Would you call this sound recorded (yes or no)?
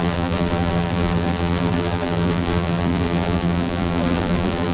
no